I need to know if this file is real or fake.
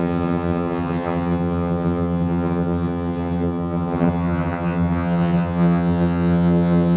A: fake